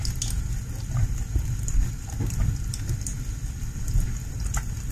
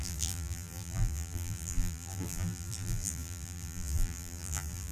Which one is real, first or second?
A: first